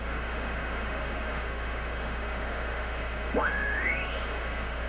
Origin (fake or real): fake